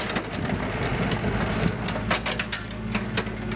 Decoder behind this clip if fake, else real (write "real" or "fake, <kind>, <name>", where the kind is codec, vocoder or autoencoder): real